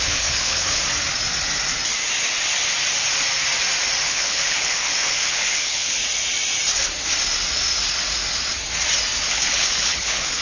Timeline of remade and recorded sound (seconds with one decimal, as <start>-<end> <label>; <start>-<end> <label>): 0.0-0.8 remade; 0.8-4.0 recorded; 4.0-6.0 remade; 6.0-9.2 recorded; 9.2-10.4 remade

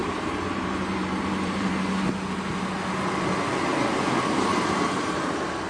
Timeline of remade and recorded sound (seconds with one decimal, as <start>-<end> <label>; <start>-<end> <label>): 0.0-1.7 remade; 1.7-3.7 recorded; 3.7-5.3 remade; 5.3-5.7 recorded

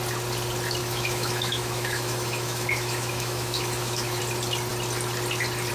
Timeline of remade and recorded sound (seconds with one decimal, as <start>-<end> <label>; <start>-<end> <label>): 0.0-0.8 recorded; 0.8-4.2 remade; 4.2-5.7 recorded

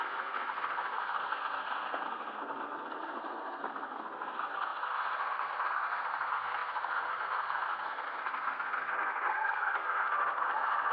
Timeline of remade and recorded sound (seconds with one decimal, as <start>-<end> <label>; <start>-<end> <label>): 0.0-10.9 remade

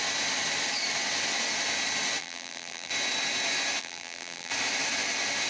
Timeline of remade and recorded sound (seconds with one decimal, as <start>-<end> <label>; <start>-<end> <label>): 0.0-2.2 recorded; 2.2-2.9 remade; 2.9-3.8 recorded; 3.8-4.5 remade; 4.5-5.5 recorded